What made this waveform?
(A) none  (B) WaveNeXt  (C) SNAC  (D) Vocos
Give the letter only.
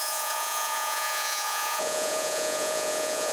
D